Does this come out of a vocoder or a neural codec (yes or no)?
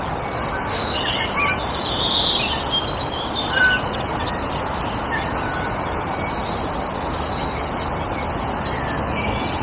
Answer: no